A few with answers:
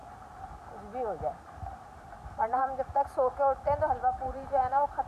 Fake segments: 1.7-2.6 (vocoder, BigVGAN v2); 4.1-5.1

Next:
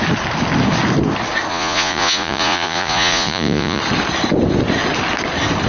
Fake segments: 1.5-3.8 (vocoder, Vocos)